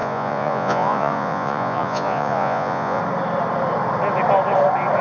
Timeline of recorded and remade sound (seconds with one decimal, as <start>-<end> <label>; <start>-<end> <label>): 0.0-3.0 remade; 3.0-5.0 recorded